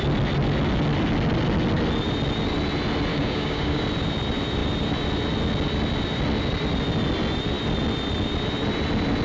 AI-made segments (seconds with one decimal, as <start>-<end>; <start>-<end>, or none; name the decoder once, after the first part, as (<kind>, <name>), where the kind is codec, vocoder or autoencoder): 3.1-3.8 (codec, DAC)